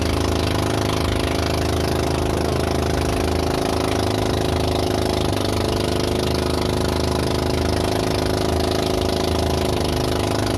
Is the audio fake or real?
real